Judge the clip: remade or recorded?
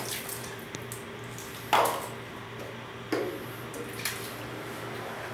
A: recorded